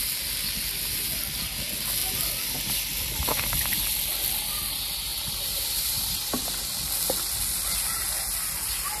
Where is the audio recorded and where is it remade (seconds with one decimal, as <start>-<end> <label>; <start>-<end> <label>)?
0.0-5.1 recorded; 5.1-6.5 remade; 6.5-9.0 recorded